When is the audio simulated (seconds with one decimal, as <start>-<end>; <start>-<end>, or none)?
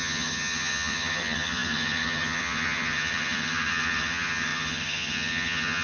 0.0-5.8